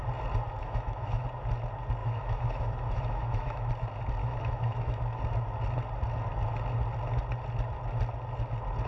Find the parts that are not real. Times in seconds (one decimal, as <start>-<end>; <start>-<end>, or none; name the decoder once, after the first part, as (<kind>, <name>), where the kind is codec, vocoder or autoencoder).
0.6-1.2 (autoencoder, DAC-VAE); 2.0-3.7; 4.2-5.2